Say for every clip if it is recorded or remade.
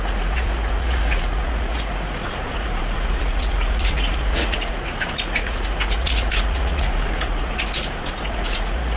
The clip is remade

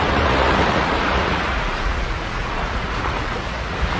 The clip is remade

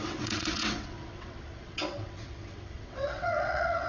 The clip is remade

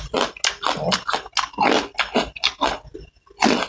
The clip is recorded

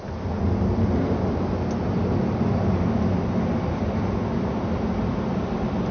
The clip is recorded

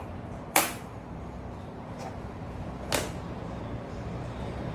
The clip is remade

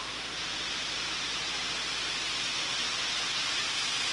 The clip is recorded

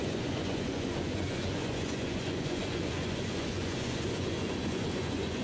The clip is remade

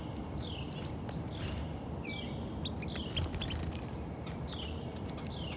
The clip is recorded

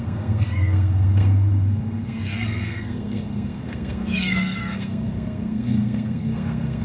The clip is remade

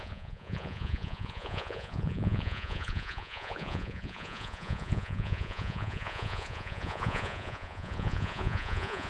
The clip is remade